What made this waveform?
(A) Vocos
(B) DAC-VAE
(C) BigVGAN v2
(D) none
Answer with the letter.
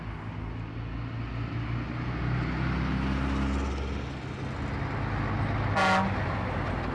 D